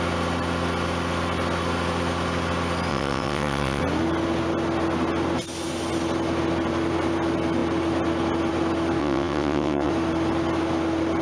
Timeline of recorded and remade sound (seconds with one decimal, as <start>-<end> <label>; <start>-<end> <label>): 0.0-2.9 recorded; 2.9-3.8 remade; 3.8-9.0 recorded; 9.0-9.9 remade; 9.9-11.2 recorded